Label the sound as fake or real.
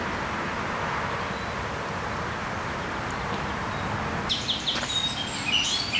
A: real